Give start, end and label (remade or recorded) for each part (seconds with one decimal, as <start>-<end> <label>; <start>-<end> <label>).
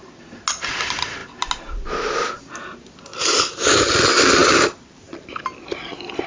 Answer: 0.0-3.1 recorded; 3.1-3.9 remade; 3.9-4.4 recorded; 4.4-5.4 remade; 5.4-6.3 recorded